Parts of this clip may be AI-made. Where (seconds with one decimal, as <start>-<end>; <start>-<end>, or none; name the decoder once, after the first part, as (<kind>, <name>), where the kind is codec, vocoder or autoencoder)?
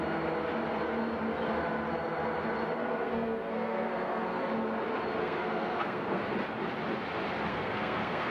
2.8-4.4 (codec, SNAC); 5.2-6.3; 7.5-8.3